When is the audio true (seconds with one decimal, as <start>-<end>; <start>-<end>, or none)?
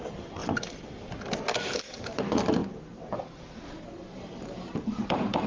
0.4-1.8